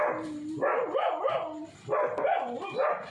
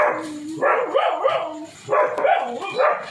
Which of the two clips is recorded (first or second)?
first